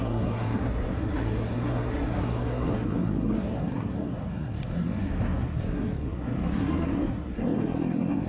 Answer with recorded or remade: remade